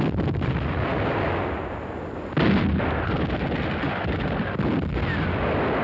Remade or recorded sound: recorded